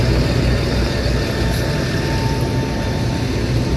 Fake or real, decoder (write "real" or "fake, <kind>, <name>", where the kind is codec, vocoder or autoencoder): real